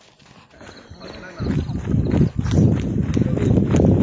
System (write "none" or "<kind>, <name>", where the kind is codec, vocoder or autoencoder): none